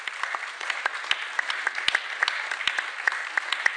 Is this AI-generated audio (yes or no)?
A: no